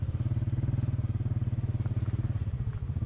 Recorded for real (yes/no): no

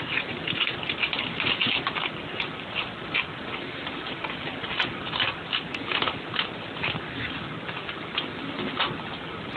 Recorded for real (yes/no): yes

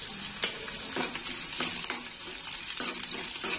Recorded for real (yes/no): no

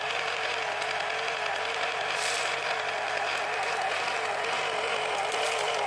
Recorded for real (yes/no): no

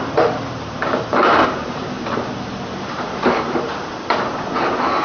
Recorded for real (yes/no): no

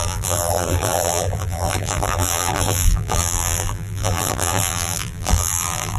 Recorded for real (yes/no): no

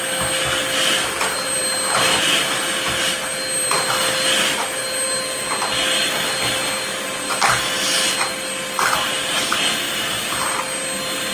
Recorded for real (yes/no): yes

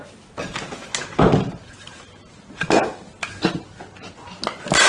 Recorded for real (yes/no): yes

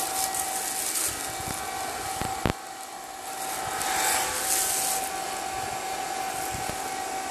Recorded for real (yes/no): yes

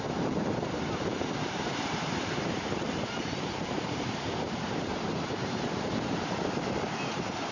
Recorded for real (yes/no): no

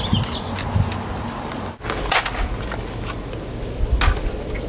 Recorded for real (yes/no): yes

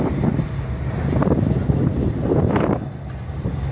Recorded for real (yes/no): no